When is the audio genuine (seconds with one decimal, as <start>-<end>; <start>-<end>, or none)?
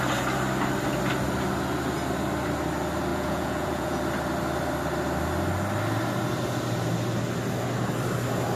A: 0.0-3.1; 4.0-8.6